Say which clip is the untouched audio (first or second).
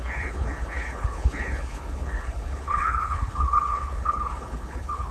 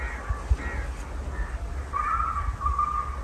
second